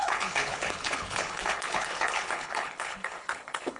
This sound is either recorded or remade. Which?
remade